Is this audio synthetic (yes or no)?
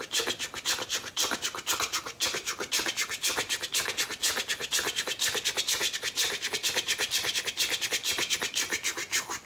no